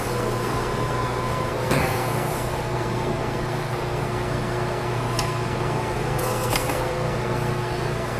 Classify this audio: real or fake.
fake